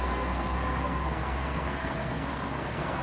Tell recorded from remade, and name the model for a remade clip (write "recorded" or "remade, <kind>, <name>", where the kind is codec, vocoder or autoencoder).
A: remade, codec, SNAC